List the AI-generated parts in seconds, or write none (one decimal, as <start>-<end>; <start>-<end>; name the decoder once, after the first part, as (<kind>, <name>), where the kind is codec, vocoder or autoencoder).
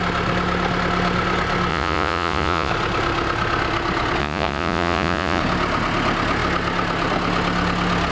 1.7-2.7 (vocoder, Vocos); 4.2-5.4